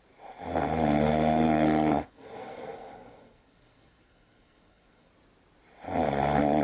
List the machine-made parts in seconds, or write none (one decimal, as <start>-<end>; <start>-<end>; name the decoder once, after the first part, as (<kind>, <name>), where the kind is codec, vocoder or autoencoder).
1.1-5.1 (codec, SNAC)